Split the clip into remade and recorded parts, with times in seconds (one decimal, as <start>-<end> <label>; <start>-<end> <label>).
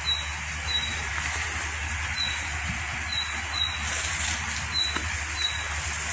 0.0-6.1 recorded